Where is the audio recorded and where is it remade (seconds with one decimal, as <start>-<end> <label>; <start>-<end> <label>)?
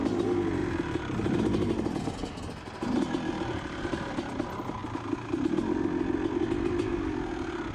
0.0-7.7 recorded